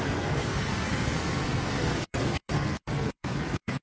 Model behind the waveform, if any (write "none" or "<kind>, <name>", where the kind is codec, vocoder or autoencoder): codec, SNAC